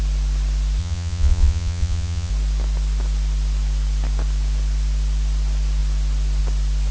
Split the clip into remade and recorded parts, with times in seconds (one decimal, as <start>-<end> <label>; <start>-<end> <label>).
0.0-0.8 recorded; 0.8-2.3 remade; 2.3-6.9 recorded